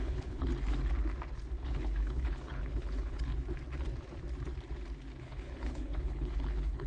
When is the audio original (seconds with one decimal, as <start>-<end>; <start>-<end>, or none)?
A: 0.5-1.6; 3.3-5.2